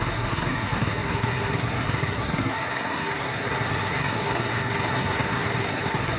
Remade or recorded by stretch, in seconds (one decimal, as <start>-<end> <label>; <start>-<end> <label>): 0.0-6.2 remade